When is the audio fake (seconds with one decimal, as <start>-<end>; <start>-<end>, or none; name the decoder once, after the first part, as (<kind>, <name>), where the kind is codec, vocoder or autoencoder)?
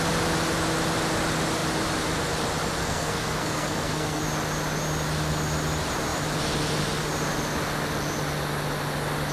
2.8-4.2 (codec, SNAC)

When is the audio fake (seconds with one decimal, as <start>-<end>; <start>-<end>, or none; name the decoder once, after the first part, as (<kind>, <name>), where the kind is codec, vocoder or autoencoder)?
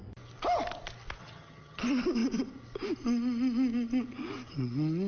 1.2-1.8 (vocoder, HiFi-GAN)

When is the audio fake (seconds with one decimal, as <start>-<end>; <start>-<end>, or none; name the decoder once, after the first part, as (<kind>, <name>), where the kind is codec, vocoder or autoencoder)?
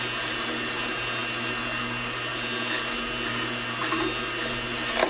none